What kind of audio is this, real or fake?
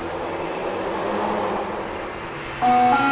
real